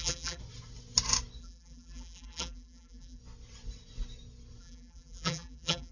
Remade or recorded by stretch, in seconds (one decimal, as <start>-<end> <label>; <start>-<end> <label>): 0.0-0.4 remade; 0.4-1.4 recorded; 1.4-3.2 remade; 3.2-4.6 recorded; 4.6-5.9 remade